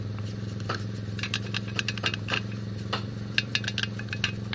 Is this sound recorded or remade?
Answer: recorded